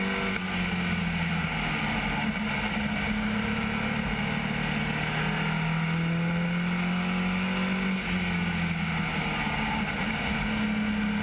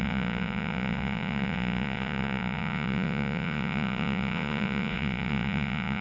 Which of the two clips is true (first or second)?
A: first